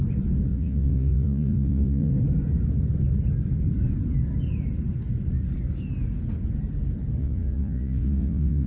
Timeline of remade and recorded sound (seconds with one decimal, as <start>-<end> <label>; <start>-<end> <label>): 0.0-0.5 recorded; 0.5-2.1 remade; 2.1-7.2 recorded; 7.2-8.7 remade